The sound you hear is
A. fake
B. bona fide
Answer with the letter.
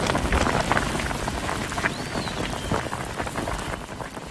B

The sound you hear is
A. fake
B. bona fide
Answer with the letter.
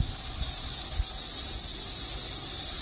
B